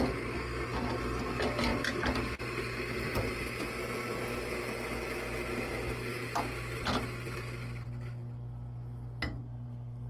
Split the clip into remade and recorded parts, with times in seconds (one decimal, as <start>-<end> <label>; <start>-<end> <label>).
0.0-9.4 recorded; 9.4-10.1 remade